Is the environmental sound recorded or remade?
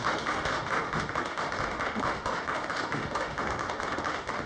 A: remade